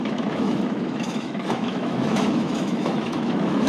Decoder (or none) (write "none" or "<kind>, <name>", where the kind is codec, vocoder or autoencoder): autoencoder, DAC-VAE